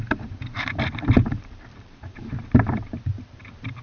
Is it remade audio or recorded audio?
remade